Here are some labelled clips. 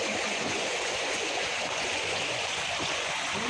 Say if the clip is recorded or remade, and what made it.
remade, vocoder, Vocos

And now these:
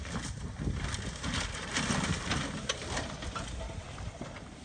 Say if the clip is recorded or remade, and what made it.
recorded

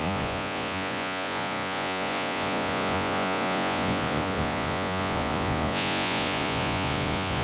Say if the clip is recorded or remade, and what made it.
remade, vocoder, Vocos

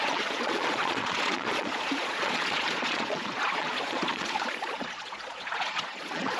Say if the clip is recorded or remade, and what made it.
remade, vocoder, Vocos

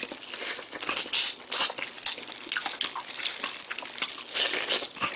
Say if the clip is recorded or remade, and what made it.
recorded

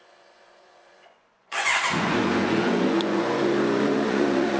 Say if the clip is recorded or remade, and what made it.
remade, vocoder, Vocos